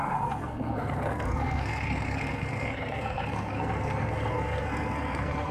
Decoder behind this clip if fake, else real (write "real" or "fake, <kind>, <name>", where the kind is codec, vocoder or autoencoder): fake, codec, SNAC